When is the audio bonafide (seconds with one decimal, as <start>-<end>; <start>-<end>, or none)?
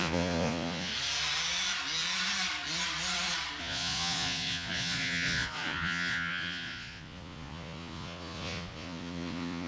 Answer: 0.9-3.6